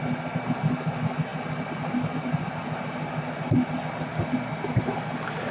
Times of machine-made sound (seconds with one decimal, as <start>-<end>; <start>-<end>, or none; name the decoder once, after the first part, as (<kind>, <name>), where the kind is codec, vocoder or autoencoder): none